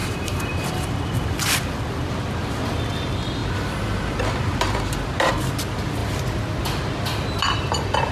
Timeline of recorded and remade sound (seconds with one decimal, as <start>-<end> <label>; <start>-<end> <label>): 0.0-0.7 remade; 0.7-3.4 recorded; 3.4-5.3 remade; 5.3-8.1 recorded